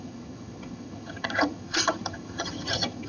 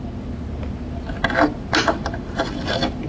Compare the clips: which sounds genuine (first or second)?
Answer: second